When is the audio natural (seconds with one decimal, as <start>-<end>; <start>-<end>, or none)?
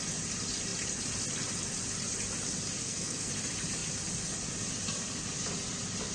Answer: 0.0-2.8; 3.3-6.1